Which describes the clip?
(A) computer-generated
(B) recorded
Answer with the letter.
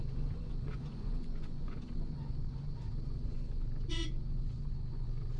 A